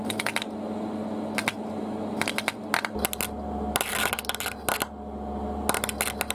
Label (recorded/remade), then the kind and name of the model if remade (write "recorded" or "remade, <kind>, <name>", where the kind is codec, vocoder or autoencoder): recorded